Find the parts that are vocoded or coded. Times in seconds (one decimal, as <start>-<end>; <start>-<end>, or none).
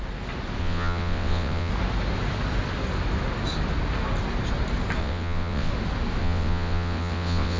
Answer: 0.6-1.7; 5.0-5.7; 6.2-7.6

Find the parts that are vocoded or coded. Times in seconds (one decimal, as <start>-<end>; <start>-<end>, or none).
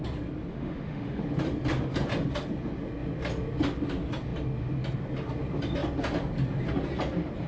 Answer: 0.5-1.2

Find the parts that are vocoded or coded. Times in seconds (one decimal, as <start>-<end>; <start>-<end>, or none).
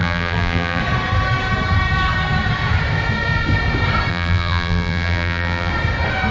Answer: 0.0-0.8; 4.1-5.7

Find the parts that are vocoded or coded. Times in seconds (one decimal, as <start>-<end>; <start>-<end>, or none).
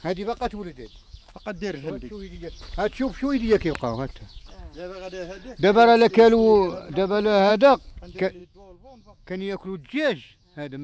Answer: 0.0-3.0; 4.1-5.4; 7.5-10.8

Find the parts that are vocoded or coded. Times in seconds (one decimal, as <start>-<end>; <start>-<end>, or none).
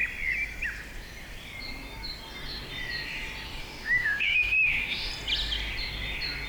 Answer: 3.6-5.1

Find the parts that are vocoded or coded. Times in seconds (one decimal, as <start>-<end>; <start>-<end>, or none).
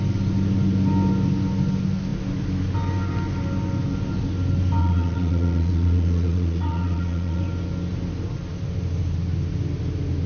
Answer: 4.8-7.4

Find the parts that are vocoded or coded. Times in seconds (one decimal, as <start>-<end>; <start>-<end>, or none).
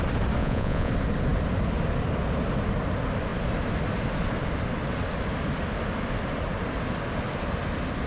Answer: 0.4-0.9